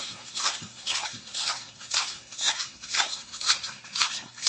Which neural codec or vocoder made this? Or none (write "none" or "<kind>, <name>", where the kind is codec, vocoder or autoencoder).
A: codec, SNAC